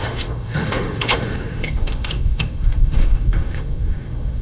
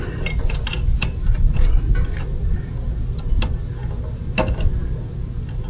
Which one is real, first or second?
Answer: second